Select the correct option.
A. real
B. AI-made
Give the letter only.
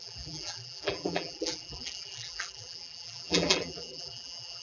B